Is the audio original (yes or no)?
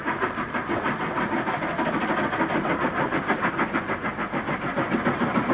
yes